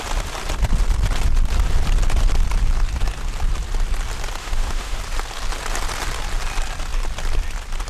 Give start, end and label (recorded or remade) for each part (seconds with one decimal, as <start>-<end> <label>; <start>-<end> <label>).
0.0-4.4 recorded; 4.4-5.0 remade; 5.0-7.9 recorded